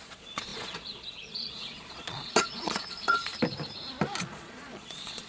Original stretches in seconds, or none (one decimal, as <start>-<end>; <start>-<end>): 3.3-4.2